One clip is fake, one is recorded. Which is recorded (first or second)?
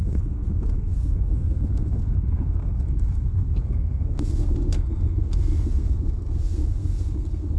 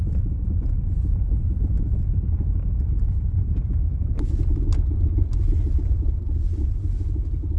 second